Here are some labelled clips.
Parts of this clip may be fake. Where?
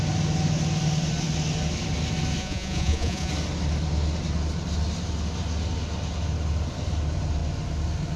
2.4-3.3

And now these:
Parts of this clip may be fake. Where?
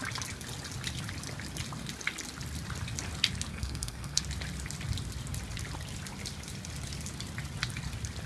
3.5-4.2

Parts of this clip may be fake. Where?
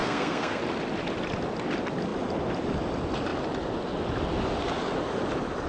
0.0-0.6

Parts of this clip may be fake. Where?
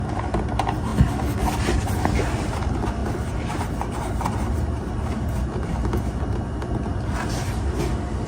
3.0-6.4